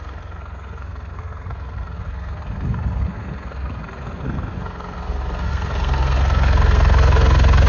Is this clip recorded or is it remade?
remade